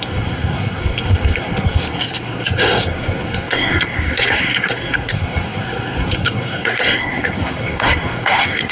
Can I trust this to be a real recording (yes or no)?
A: no